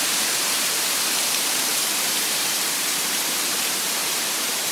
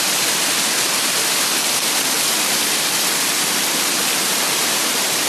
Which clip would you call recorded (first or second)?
second